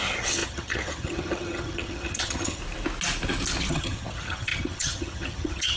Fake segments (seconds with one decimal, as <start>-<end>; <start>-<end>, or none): 0.0-2.6; 3.7-5.8